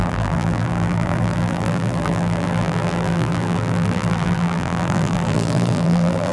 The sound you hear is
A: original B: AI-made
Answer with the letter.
B